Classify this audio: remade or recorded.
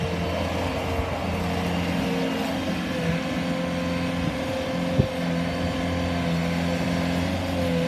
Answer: recorded